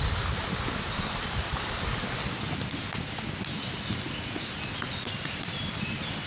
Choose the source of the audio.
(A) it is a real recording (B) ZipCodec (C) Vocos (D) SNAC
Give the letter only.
A